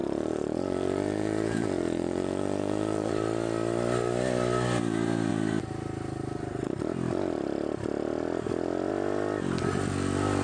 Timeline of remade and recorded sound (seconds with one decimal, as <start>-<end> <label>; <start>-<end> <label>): 0.0-3.1 remade; 3.1-10.4 recorded